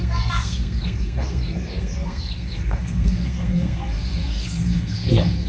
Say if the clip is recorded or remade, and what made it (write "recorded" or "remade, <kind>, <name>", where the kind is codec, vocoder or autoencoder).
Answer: remade, codec, SNAC